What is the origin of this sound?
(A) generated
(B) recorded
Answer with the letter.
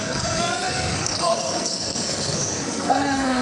A